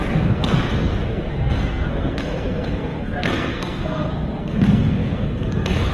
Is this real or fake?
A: fake